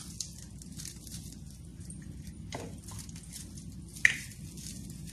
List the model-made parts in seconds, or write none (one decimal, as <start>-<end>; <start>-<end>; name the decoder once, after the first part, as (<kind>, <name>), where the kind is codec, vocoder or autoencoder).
none